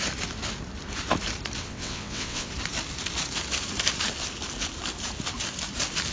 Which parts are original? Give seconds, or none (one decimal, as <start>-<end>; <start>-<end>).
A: 0.0-1.6; 2.5-6.1